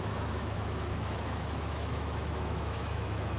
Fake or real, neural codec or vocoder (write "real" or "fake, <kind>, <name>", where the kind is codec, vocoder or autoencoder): fake, autoencoder, DAC-VAE